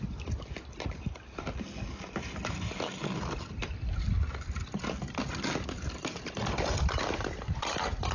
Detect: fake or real real